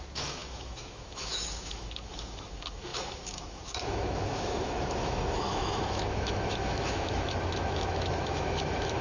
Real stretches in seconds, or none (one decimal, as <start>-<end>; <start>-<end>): none